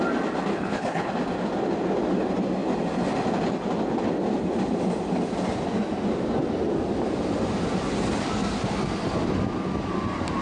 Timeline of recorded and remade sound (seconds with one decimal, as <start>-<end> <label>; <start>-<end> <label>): 0.0-0.5 recorded; 0.5-1.1 remade; 1.1-10.4 recorded